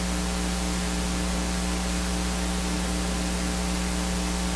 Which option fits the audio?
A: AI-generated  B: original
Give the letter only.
B